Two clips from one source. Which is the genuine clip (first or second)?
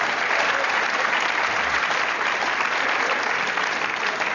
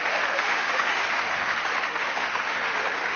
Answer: first